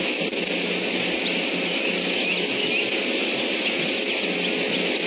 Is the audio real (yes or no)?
yes